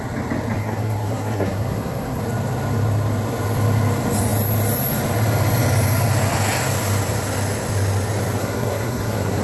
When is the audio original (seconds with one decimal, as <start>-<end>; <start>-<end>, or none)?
0.0-0.6; 2.2-8.4

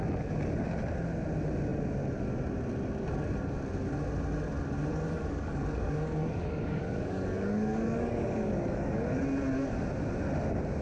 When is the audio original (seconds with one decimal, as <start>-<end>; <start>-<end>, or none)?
0.0-4.9; 9.2-10.8

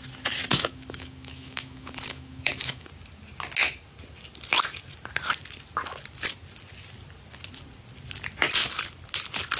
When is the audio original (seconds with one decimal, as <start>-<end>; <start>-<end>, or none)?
0.0-0.5; 2.9-9.6

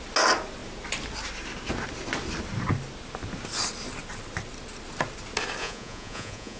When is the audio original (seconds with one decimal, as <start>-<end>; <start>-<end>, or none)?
0.0-5.6

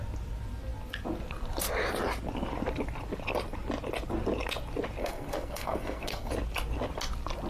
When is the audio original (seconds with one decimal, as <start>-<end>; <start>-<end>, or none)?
0.0-5.0; 6.3-7.5